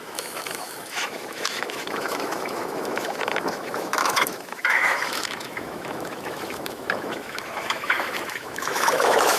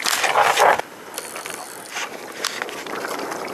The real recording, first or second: second